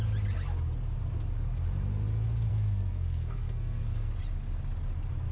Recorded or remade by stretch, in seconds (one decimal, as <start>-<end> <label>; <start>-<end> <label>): 0.0-2.5 recorded; 2.5-4.1 remade; 4.1-5.3 recorded